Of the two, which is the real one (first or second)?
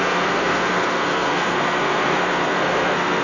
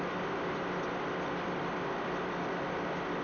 second